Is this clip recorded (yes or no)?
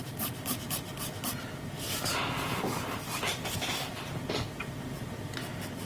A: yes